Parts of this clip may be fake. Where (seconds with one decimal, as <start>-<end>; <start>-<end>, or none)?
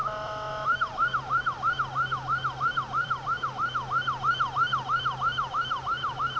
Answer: 0.0-0.5; 3.0-3.5